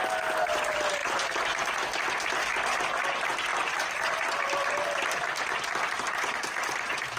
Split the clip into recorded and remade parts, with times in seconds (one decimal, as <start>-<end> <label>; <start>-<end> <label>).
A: 0.0-1.0 recorded; 1.0-1.6 remade; 1.6-3.5 recorded; 3.5-6.3 remade; 6.3-7.2 recorded